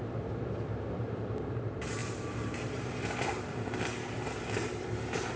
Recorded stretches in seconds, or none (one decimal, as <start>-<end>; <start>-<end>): none